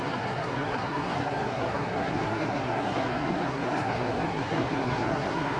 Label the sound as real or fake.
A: fake